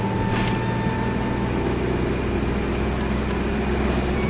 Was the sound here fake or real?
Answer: real